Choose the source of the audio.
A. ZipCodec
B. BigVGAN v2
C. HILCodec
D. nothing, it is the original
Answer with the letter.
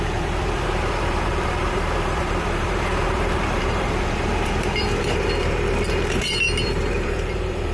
B